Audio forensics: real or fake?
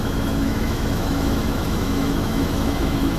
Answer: fake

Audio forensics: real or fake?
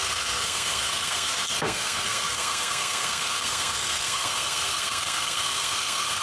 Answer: fake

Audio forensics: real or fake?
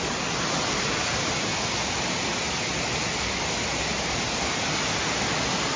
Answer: real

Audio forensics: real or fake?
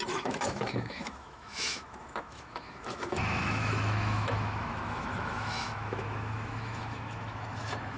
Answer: fake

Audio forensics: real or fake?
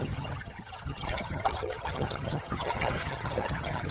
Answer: fake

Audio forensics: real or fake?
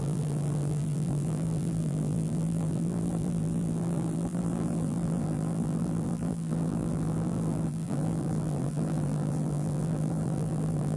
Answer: fake